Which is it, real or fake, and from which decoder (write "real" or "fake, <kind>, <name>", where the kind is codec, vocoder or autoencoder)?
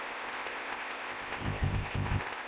fake, codec, ZipCodec